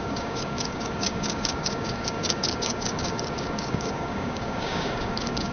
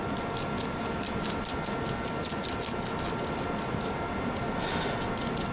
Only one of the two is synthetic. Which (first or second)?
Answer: first